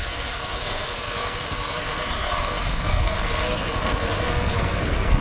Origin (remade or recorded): remade